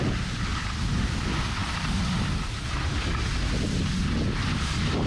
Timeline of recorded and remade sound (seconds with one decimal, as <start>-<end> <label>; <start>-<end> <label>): 0.0-5.1 recorded